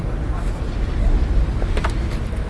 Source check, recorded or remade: recorded